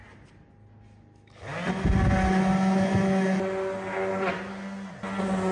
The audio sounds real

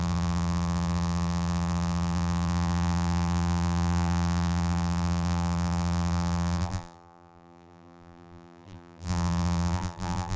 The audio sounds fake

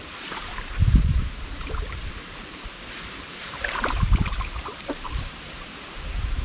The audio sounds fake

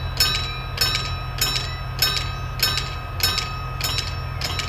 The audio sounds real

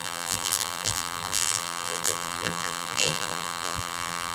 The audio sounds fake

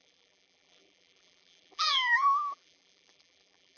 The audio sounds fake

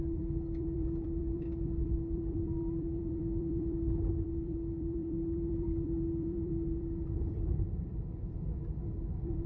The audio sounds fake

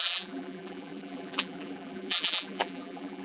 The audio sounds fake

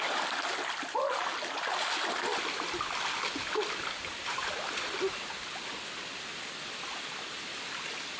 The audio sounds real